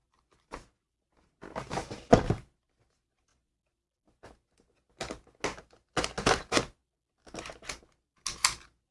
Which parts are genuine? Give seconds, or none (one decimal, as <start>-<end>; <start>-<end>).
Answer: 0.0-8.9